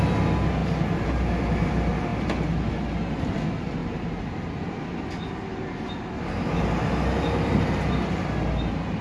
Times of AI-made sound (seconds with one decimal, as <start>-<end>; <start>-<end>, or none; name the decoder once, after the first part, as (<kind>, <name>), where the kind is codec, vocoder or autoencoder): 0.6-1.7 (vocoder, BigVGAN v2); 3.8-4.8